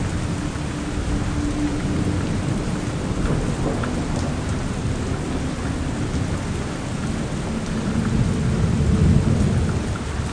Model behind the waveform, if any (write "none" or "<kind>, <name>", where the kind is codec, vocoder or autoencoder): none